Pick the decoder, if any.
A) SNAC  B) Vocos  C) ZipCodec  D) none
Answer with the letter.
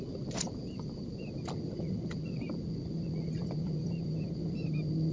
D